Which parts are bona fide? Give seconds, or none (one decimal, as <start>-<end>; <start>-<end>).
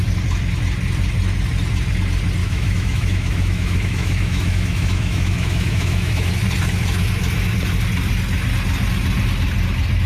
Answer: 0.0-2.4; 6.3-10.1